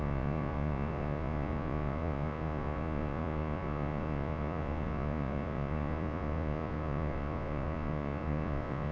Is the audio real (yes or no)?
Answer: no